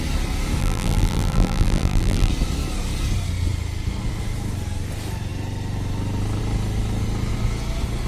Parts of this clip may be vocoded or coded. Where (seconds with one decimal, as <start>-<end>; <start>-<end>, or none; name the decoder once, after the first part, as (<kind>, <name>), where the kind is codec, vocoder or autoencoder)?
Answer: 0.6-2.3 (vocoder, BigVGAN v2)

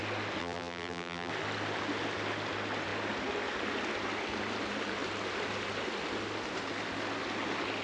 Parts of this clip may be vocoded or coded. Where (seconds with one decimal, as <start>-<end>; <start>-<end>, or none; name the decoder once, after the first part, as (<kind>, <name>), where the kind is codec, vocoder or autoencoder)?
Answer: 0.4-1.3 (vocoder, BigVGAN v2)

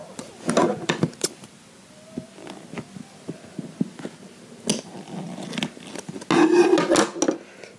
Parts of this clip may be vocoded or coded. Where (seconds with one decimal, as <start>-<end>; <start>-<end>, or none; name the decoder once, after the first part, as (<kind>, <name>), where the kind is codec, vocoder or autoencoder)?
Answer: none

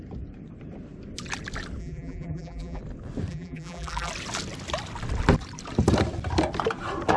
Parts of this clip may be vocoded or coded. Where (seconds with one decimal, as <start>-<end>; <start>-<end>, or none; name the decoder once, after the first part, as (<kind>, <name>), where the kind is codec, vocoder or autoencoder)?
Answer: 1.8-2.8 (vocoder, BigVGAN v2); 3.3-4.1

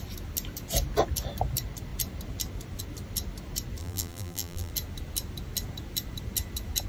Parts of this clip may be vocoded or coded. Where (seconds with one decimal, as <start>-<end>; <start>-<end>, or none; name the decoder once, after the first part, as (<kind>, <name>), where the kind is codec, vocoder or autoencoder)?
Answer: 3.8-4.7 (vocoder, BigVGAN v2)

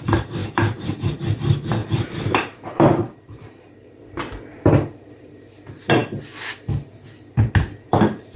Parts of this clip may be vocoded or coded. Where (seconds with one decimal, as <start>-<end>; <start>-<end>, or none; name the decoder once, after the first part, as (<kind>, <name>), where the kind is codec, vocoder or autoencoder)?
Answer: 0.4-1.2 (vocoder, BigVGAN v2); 1.8-4.0; 4.5-5.4